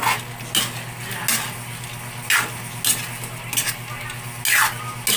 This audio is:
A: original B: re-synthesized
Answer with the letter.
A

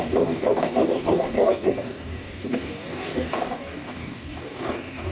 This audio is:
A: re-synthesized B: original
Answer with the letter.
A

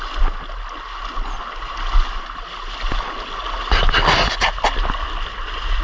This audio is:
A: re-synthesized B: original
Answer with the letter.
B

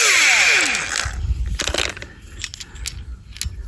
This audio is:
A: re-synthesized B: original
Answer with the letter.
B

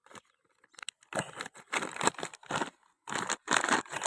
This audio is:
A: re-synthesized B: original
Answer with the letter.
B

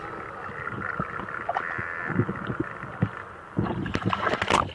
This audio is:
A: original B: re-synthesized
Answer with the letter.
A